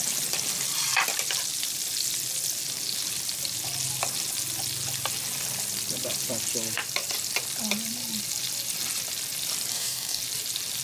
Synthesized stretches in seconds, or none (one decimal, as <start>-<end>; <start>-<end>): 9.7-10.2